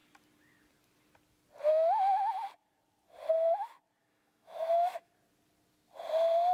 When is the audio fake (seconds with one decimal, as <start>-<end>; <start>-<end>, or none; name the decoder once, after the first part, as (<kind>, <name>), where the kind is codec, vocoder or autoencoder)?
4.0-5.1 (autoencoder, DAC-VAE)